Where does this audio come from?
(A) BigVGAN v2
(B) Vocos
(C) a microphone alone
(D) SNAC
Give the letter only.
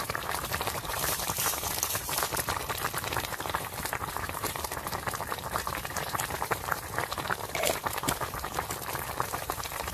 A